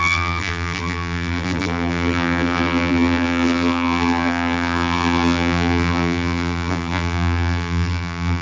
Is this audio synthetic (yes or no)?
yes